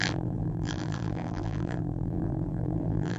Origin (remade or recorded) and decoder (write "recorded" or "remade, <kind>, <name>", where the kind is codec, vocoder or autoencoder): remade, vocoder, BigVGAN v2